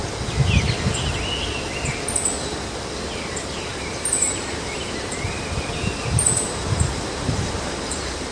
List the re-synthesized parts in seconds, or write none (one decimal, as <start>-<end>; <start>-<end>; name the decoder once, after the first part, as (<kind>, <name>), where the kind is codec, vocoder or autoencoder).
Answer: 3.7-8.3 (vocoder, BigVGAN v2)